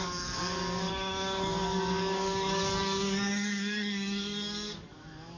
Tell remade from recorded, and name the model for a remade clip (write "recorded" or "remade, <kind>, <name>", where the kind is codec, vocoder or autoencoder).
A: remade, codec, DAC